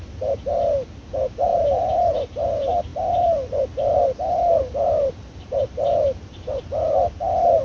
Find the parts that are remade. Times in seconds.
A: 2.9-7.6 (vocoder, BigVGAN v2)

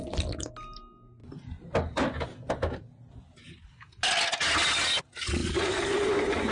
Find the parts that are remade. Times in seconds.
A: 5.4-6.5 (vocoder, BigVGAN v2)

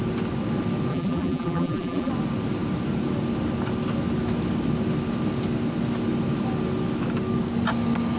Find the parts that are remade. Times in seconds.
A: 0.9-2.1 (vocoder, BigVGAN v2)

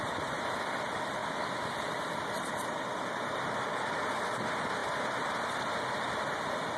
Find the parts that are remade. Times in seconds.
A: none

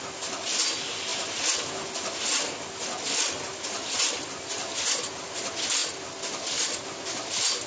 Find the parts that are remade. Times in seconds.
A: none

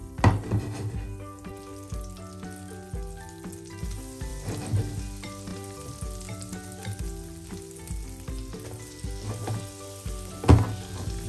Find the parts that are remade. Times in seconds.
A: none

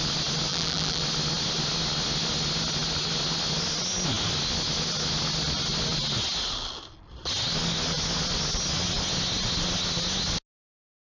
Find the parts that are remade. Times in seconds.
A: 0.5-1.0 (vocoder, BigVGAN v2)